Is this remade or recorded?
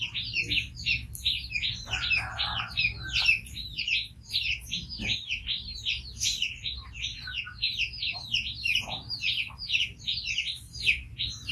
recorded